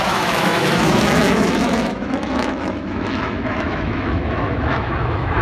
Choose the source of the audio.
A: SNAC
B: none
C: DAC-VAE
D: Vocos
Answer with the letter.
C